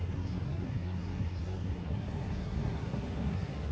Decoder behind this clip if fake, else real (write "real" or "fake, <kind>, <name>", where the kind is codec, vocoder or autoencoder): fake, codec, SNAC